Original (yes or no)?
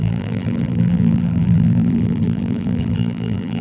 no